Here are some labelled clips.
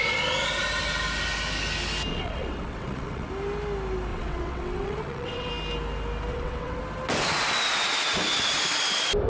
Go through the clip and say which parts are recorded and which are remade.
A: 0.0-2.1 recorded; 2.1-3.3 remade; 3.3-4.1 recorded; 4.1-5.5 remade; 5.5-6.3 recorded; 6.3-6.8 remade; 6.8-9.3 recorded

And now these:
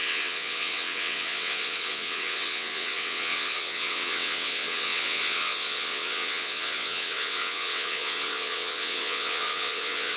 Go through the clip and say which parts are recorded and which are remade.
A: 0.0-10.2 remade

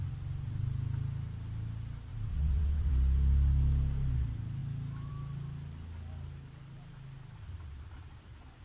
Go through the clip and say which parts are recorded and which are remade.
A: 0.0-2.1 recorded; 2.1-2.9 remade; 2.9-8.6 recorded

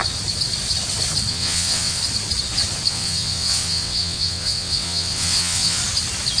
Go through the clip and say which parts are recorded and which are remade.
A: 0.0-1.3 recorded; 1.3-2.0 remade; 2.0-2.9 recorded; 2.9-5.8 remade; 5.8-6.4 recorded

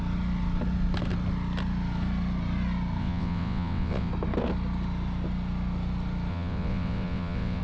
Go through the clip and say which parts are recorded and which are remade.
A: 0.0-3.0 recorded; 3.0-4.1 remade; 4.1-6.3 recorded; 6.3-7.6 remade

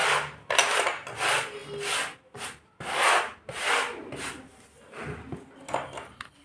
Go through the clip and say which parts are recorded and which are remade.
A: 0.0-6.4 recorded